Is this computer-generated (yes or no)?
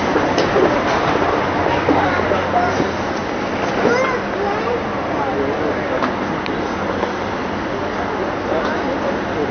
no